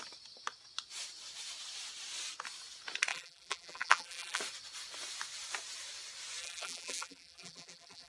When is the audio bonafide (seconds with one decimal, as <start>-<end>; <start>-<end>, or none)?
0.0-3.1; 4.4-6.4